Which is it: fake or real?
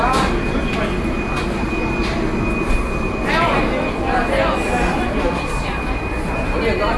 real